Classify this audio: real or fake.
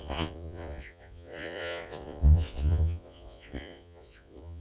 fake